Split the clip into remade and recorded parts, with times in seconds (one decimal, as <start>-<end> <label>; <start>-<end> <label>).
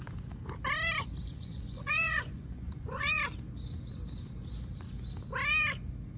0.0-1.3 recorded; 1.3-3.2 remade; 3.2-6.2 recorded